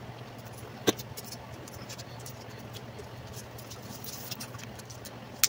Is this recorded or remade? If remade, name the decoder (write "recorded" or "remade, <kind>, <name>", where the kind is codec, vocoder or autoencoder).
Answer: recorded